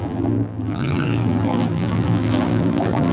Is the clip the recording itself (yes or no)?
no